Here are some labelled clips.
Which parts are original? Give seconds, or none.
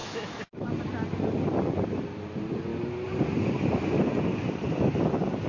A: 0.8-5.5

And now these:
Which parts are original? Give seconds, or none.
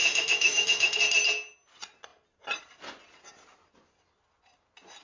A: 1.0-5.0